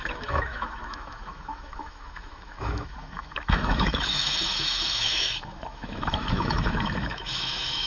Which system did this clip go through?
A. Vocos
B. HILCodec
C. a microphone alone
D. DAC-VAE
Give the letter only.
D